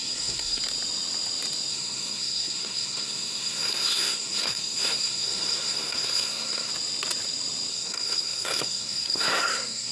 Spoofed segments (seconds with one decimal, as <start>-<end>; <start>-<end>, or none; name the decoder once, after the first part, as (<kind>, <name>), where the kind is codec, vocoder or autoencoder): 0.0-0.6 (codec, SNAC); 1.7-6.7; 7.7-9.9